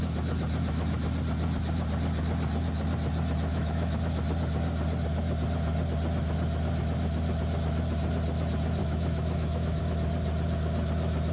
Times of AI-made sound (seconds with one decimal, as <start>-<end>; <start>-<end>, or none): 3.5-4.0; 8.8-9.8